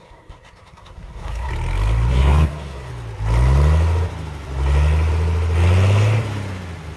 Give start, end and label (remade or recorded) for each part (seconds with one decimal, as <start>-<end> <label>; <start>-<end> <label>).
0.0-1.5 remade; 1.5-2.1 recorded; 2.1-2.9 remade; 2.9-7.0 recorded